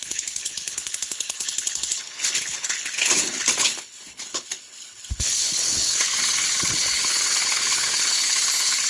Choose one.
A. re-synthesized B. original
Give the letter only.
A